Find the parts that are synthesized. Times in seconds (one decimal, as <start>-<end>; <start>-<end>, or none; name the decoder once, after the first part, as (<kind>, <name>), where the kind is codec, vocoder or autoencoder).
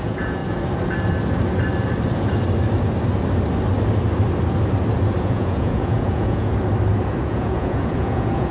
0.0-0.4 (vocoder, Vocos); 5.2-6.5; 7.2-8.5